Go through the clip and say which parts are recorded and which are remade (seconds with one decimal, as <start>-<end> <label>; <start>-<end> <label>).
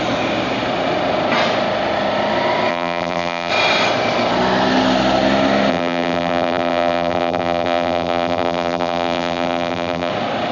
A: 0.0-2.7 recorded; 2.7-3.5 remade; 3.5-5.7 recorded; 5.7-10.1 remade; 10.1-10.5 recorded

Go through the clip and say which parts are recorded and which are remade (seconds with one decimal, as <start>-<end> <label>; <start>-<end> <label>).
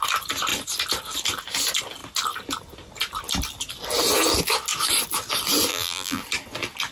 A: 0.0-5.7 recorded; 5.7-6.2 remade; 6.2-6.9 recorded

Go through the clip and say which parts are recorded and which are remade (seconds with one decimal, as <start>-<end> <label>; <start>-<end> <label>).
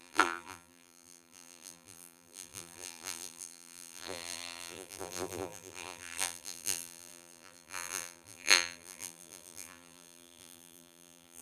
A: 0.0-11.4 remade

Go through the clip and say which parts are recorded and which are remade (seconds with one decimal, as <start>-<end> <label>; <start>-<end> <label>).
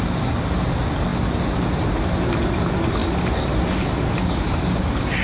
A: 0.0-3.0 recorded; 3.0-4.8 remade; 4.8-5.2 recorded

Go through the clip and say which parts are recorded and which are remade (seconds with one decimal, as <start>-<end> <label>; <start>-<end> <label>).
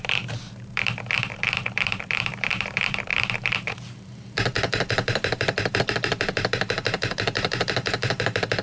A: 0.0-8.6 remade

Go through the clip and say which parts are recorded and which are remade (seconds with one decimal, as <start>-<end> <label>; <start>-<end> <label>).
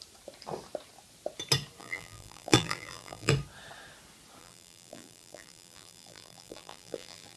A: 0.0-1.8 recorded; 1.8-3.3 remade; 3.3-4.4 recorded; 4.4-7.4 remade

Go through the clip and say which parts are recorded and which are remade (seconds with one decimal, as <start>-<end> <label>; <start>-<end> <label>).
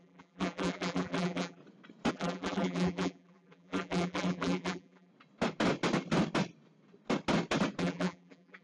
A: 0.0-1.6 remade; 1.6-2.1 recorded; 2.1-5.1 remade; 5.1-7.8 recorded; 7.8-8.6 remade